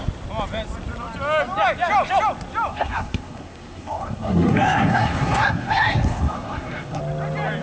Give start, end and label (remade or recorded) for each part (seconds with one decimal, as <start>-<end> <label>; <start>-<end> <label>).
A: 0.0-2.7 recorded; 2.7-7.0 remade; 7.0-7.6 recorded